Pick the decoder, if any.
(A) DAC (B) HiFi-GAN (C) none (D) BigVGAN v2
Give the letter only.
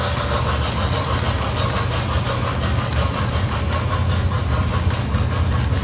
C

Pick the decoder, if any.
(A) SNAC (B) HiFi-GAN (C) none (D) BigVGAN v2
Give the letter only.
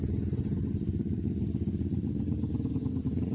C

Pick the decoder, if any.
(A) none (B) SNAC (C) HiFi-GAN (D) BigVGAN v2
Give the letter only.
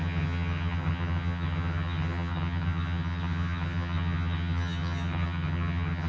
C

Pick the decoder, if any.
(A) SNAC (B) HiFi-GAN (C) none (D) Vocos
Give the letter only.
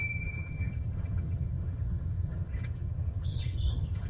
B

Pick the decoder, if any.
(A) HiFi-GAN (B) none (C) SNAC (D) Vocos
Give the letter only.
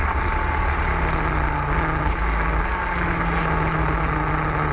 B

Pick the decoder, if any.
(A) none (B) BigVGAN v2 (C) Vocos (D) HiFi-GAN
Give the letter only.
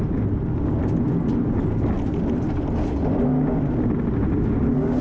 A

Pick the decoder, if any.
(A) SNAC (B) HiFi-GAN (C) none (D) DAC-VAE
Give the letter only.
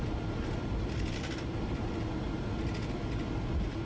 C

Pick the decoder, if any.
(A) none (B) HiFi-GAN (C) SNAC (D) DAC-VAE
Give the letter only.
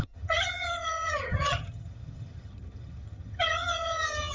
B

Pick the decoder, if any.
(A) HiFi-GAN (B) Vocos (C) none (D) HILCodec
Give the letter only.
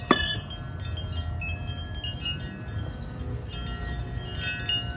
C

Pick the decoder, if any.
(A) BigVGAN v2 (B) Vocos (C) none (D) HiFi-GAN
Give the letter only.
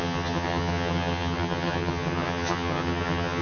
D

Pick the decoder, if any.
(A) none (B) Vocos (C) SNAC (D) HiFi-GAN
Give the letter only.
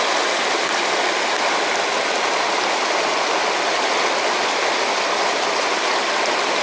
A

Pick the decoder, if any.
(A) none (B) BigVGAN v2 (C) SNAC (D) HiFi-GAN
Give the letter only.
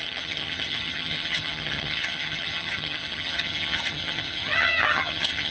D